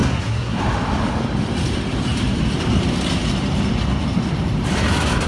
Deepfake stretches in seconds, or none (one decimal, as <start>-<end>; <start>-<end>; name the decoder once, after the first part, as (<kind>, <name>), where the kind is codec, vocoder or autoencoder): 0.0-0.6 (codec, SNAC)